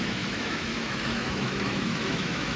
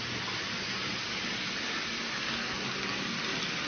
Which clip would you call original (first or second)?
second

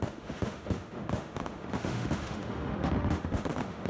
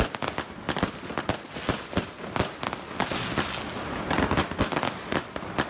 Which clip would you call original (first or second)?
second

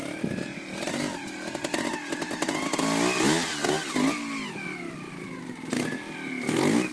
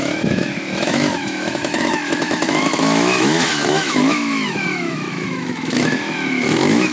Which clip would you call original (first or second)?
first